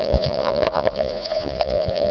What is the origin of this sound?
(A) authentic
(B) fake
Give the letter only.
B